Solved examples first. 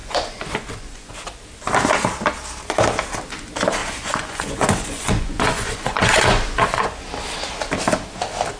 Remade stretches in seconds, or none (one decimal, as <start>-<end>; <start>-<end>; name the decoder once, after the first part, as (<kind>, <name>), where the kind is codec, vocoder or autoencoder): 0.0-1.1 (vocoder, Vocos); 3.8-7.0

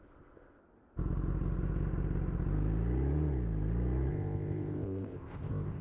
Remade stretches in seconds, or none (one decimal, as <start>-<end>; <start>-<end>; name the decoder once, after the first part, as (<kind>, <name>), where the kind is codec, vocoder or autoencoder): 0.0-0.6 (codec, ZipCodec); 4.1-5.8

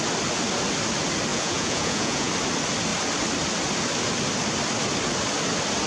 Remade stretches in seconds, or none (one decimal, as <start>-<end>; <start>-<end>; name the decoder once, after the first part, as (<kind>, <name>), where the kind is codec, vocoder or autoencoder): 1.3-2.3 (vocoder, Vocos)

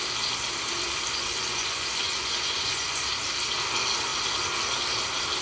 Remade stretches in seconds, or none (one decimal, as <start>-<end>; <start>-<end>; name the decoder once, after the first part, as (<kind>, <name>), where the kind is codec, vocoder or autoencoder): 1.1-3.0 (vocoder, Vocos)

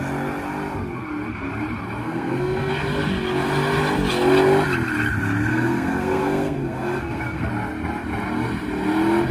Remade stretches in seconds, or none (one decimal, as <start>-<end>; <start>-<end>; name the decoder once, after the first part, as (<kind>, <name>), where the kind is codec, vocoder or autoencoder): 2.0-2.7 (codec, SNAC); 5.5-7.5

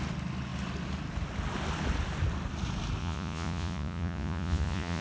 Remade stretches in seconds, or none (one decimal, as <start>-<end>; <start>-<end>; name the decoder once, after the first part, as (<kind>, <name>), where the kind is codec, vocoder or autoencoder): 3.0-5.0 (vocoder, Vocos)

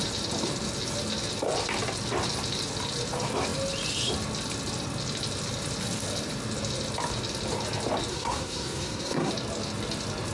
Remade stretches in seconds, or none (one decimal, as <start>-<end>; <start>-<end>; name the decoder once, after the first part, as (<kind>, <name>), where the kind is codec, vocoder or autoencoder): 8.1-9.3 (codec, SNAC)